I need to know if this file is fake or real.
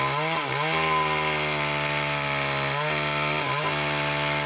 real